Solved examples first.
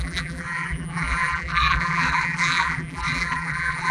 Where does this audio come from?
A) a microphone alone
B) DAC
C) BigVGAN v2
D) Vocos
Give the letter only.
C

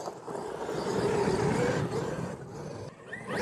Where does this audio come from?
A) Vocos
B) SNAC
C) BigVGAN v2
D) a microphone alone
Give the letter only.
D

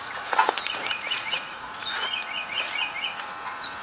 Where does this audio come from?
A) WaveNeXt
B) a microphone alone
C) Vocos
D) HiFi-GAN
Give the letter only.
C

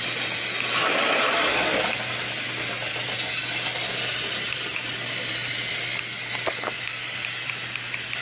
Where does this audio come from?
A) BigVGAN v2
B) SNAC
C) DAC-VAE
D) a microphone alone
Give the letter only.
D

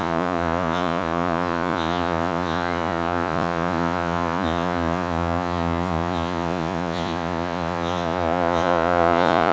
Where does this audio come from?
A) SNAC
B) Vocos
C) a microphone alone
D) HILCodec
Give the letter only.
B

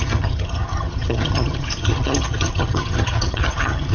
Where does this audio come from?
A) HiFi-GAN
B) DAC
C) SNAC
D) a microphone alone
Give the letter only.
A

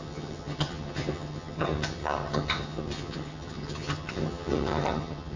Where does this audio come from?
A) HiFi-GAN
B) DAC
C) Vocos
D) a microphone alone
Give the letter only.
A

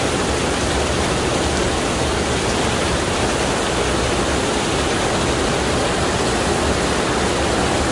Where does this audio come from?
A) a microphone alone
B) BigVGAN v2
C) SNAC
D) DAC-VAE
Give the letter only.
A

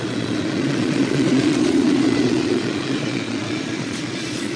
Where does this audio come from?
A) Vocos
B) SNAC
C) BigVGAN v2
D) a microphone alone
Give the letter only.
A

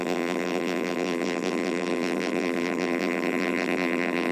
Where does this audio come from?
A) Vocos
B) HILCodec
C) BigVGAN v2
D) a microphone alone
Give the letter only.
C